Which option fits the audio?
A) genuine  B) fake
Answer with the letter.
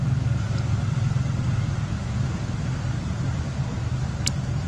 B